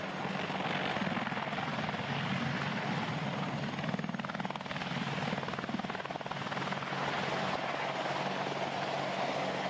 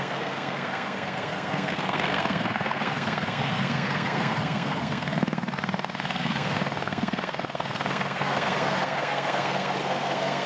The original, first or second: first